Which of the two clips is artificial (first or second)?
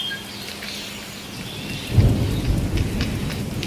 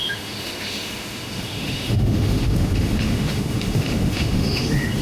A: second